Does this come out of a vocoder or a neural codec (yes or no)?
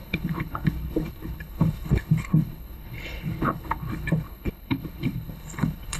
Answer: yes